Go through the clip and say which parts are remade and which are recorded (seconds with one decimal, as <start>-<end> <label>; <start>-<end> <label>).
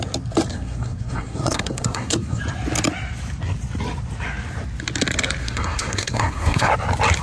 0.0-0.5 recorded; 0.5-2.4 remade; 2.4-5.4 recorded; 5.4-6.7 remade; 6.7-7.2 recorded